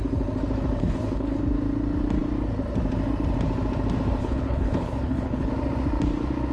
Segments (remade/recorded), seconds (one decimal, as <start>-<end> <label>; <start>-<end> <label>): 0.0-0.8 recorded; 0.8-1.4 remade; 1.4-4.2 recorded; 4.2-5.5 remade; 5.5-6.5 recorded